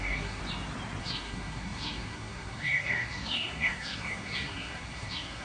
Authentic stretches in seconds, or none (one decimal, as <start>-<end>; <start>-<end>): 0.4-1.0